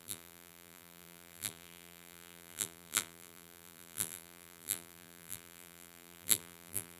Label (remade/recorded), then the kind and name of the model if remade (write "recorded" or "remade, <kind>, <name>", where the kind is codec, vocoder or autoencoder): remade, vocoder, BigVGAN v2